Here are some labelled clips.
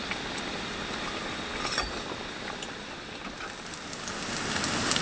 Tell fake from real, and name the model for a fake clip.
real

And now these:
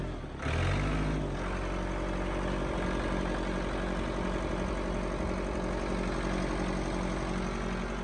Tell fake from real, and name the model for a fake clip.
real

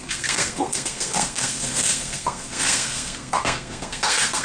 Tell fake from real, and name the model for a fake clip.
fake, codec, SNAC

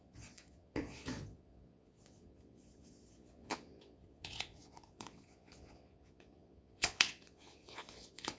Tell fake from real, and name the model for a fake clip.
fake, vocoder, Vocos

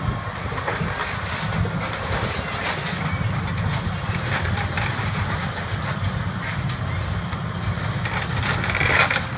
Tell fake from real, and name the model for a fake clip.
real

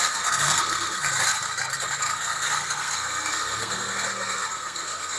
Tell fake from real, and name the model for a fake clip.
fake, codec, SNAC